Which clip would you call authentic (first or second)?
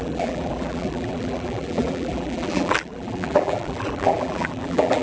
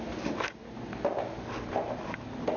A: second